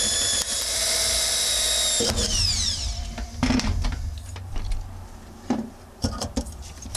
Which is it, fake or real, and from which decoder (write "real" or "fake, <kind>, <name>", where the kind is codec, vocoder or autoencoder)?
fake, vocoder, BigVGAN v2